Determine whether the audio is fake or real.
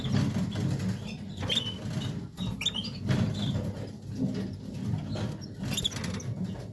real